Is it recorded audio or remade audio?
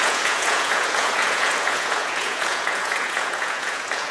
remade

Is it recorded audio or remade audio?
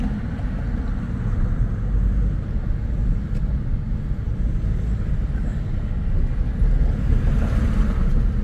recorded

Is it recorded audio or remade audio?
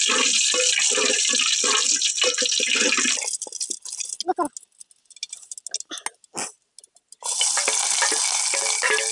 recorded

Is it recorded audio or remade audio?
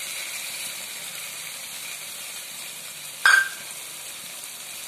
remade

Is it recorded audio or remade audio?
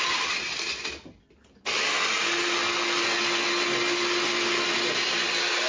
recorded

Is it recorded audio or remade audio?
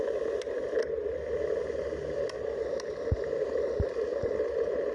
recorded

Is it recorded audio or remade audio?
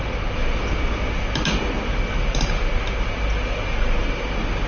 recorded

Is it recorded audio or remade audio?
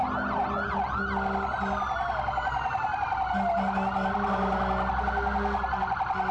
recorded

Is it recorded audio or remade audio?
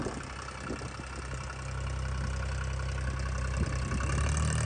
recorded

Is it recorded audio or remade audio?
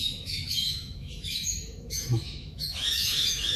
remade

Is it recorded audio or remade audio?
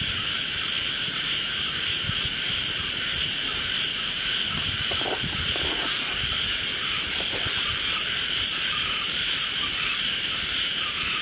remade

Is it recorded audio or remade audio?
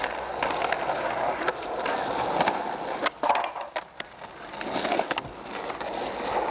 recorded